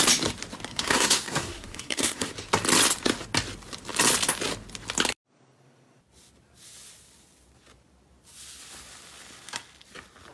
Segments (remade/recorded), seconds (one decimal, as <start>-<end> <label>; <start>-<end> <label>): 0.0-0.7 recorded; 0.7-2.3 remade; 2.3-10.3 recorded